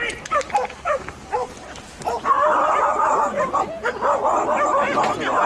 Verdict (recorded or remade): recorded